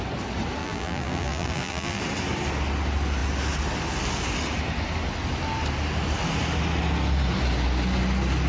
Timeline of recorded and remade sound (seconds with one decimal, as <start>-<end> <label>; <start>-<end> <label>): 0.0-0.6 recorded; 0.6-2.0 remade; 2.0-8.5 recorded